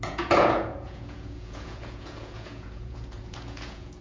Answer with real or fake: fake